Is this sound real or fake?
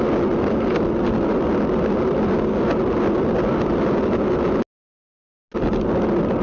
real